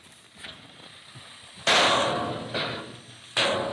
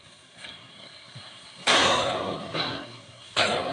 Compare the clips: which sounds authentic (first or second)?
first